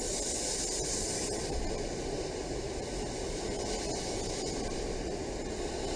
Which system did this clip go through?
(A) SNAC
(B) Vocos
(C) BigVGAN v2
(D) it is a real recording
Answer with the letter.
D